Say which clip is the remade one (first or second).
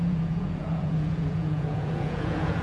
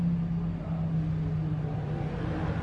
first